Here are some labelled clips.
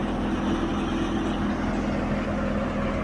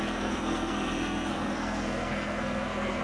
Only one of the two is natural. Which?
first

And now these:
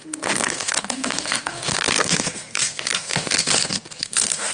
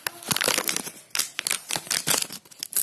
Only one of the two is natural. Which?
second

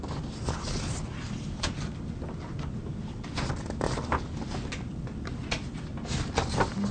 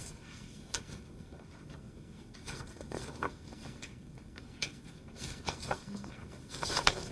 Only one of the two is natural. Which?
first